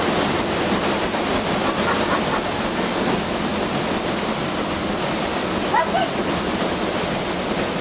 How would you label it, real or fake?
real